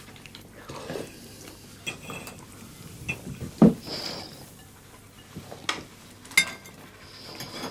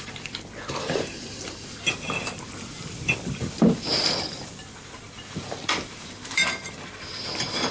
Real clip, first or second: first